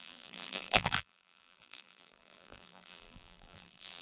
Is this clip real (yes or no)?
no